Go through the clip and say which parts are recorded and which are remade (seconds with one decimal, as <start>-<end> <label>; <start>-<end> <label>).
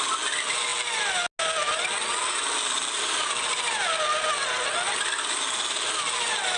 0.0-6.6 recorded